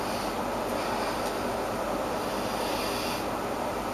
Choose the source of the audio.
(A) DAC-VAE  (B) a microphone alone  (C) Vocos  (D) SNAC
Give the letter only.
B